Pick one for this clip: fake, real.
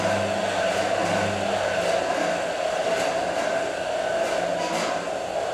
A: real